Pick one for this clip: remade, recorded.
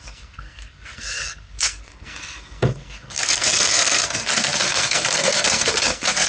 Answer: remade